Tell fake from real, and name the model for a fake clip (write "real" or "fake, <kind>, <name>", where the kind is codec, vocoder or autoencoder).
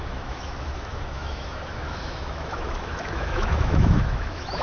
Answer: fake, autoencoder, DAC-VAE